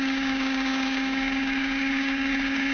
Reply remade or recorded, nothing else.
remade